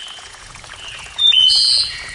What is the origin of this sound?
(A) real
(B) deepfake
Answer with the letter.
B